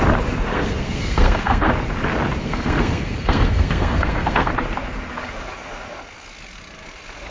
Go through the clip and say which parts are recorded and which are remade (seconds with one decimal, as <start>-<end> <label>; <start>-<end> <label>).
0.0-0.5 recorded; 0.5-1.7 remade; 1.7-2.4 recorded; 2.4-4.5 remade; 4.5-7.3 recorded